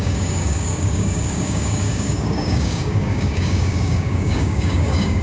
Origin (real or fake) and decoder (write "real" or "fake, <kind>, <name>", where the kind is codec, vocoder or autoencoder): fake, codec, DAC